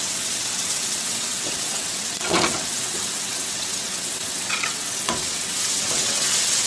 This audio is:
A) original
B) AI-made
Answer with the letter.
B